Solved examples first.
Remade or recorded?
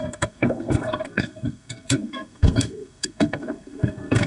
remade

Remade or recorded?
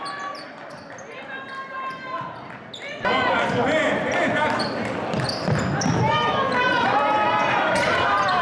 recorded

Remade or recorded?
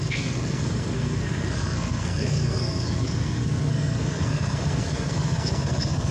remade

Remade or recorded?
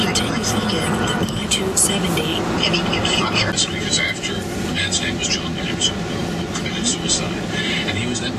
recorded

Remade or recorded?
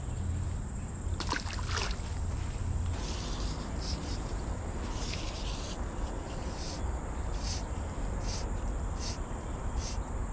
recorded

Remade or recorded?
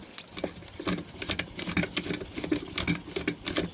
recorded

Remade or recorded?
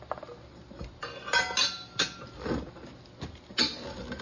recorded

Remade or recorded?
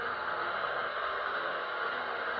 remade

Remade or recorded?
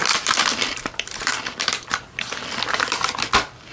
recorded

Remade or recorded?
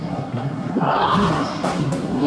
remade